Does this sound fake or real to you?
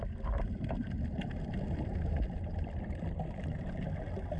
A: real